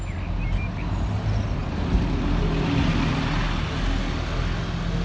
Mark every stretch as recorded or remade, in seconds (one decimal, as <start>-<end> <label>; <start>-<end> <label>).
0.0-5.0 recorded